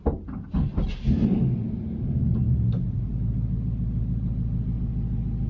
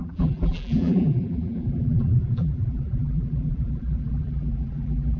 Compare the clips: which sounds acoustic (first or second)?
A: first